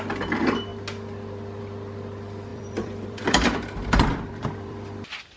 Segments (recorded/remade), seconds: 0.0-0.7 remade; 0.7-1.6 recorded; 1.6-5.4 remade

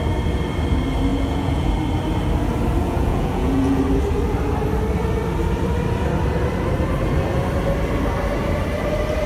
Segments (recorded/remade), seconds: 0.0-1.1 recorded; 1.1-1.7 remade; 1.7-2.8 recorded; 2.8-3.8 remade; 3.8-9.3 recorded

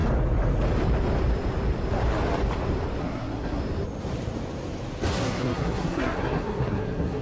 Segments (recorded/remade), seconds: 0.0-3.0 recorded; 3.0-3.6 remade; 3.6-5.1 recorded; 5.1-7.2 remade

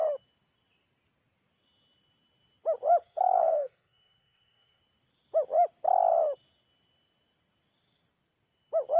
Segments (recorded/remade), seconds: 0.0-3.0 recorded; 3.0-4.8 remade; 4.8-9.0 recorded